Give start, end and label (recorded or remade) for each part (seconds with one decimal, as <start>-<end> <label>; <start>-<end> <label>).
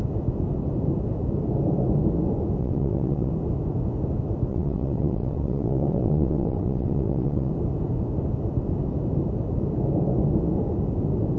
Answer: 0.0-2.6 recorded; 2.6-3.3 remade; 3.3-4.5 recorded; 4.5-7.5 remade; 7.5-11.4 recorded